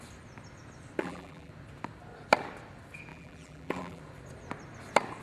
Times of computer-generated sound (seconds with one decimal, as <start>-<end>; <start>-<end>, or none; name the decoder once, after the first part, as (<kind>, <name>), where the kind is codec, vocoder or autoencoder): 1.0-1.5 (vocoder, BigVGAN v2); 3.1-4.0